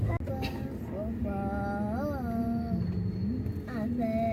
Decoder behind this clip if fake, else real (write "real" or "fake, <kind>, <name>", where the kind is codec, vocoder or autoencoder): real